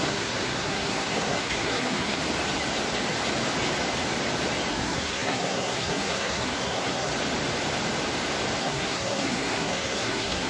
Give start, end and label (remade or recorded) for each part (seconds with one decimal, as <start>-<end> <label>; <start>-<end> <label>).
0.0-2.2 remade; 2.2-4.7 recorded; 4.7-7.1 remade; 7.1-8.6 recorded; 8.6-10.5 remade